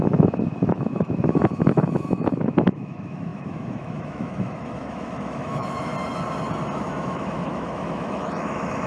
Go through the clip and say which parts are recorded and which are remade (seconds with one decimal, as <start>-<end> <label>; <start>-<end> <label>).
0.0-5.9 remade; 5.9-6.8 recorded; 6.8-8.9 remade